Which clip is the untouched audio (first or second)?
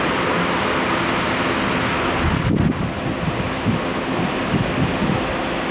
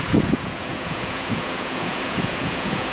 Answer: first